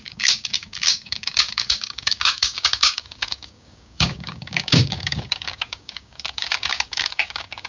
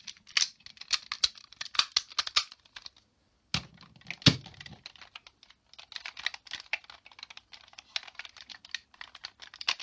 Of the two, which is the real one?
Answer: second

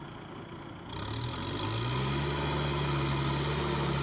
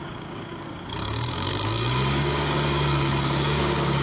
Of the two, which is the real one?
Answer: first